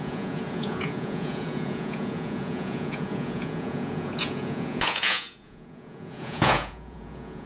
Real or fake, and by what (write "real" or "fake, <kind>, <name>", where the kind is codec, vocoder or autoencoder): fake, vocoder, Vocos